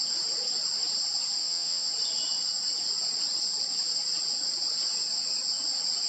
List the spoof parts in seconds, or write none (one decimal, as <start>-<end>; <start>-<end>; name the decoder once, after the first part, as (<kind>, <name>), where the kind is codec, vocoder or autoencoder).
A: 1.4-1.9 (vocoder, WaveNeXt)